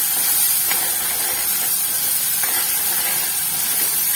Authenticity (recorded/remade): remade